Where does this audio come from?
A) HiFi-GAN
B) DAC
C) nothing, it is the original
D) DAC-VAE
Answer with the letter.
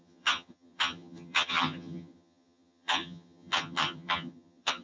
A